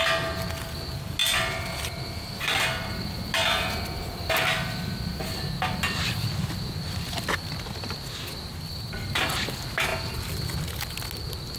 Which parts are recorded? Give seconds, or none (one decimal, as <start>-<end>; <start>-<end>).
0.0-11.6